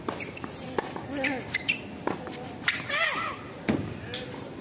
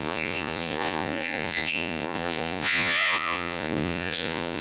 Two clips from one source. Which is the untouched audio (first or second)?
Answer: first